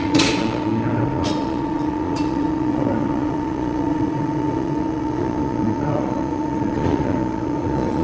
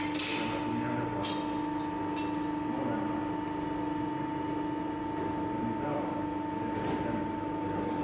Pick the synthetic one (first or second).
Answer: first